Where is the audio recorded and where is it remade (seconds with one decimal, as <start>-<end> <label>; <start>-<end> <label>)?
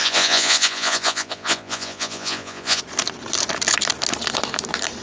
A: 0.0-2.8 remade; 2.8-5.0 recorded